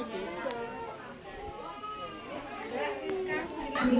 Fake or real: real